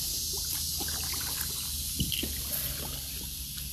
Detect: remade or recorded recorded